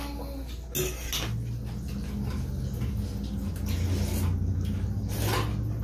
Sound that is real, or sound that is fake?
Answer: real